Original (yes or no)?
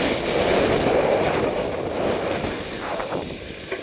yes